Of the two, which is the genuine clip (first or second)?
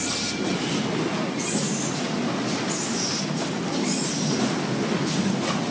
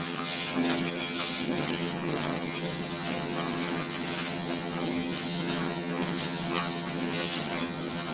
first